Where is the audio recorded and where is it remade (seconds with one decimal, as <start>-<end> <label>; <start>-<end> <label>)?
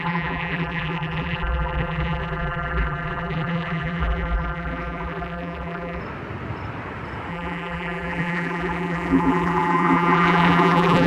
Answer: 0.0-6.0 remade; 6.0-7.3 recorded; 7.3-11.1 remade